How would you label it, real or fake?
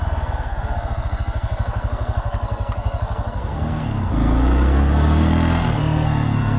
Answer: fake